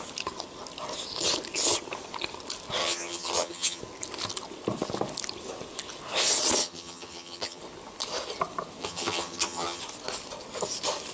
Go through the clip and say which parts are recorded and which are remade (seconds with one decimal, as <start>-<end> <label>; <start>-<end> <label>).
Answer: 0.0-2.8 recorded; 2.8-3.8 remade; 3.8-6.6 recorded; 6.6-7.6 remade; 7.6-8.8 recorded; 8.8-9.8 remade; 9.8-11.1 recorded